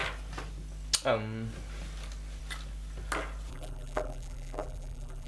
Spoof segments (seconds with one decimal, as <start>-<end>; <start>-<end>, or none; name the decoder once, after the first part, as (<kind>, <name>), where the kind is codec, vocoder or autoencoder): 3.5-5.3 (vocoder, BigVGAN v2)